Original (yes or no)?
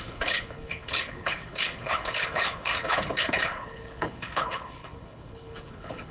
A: no